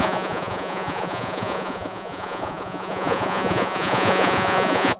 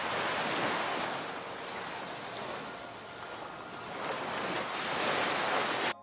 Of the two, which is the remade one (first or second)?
first